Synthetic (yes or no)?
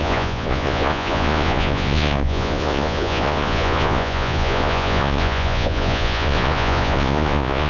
yes